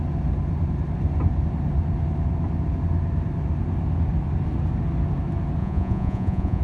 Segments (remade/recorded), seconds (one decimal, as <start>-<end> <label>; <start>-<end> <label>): 0.0-5.6 recorded; 5.6-6.6 remade